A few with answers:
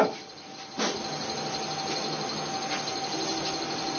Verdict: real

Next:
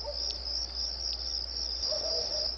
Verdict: real